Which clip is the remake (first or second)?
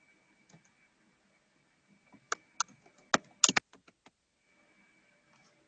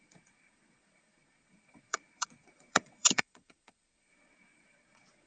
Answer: second